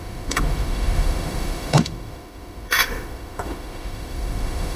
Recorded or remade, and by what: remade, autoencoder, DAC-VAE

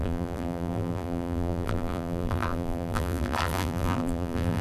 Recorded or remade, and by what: remade, vocoder, BigVGAN v2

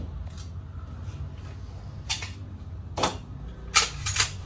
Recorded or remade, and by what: recorded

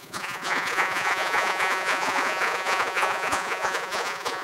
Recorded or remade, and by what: remade, vocoder, Vocos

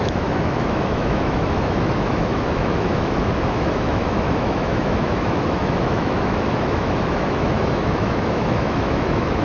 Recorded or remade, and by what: remade, autoencoder, DAC-VAE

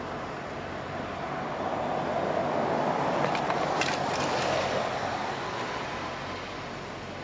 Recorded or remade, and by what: recorded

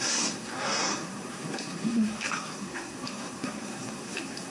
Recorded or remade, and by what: remade, codec, SNAC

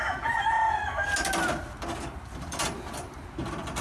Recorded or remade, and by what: recorded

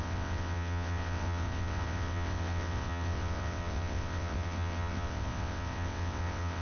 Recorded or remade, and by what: remade, vocoder, WaveNeXt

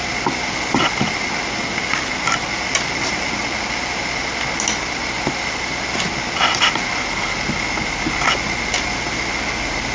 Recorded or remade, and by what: recorded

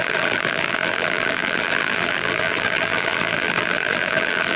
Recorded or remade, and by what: remade, vocoder, BigVGAN v2